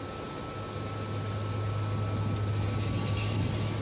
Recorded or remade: recorded